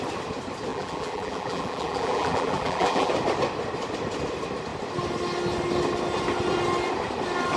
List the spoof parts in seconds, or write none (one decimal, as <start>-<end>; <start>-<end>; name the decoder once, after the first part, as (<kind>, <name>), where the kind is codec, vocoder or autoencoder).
0.7-3.1 (vocoder, BigVGAN v2)